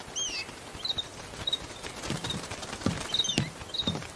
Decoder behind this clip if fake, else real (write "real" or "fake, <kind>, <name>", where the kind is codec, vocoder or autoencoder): real